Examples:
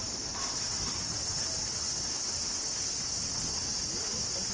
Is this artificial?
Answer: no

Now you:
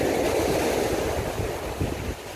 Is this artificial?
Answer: no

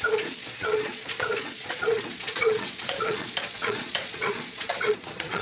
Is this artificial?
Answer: yes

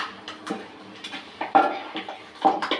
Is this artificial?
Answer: no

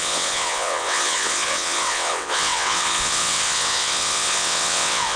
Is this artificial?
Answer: yes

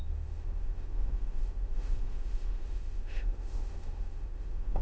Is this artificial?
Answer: yes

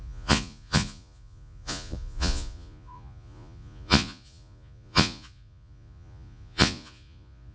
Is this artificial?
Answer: yes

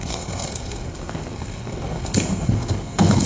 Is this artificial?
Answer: yes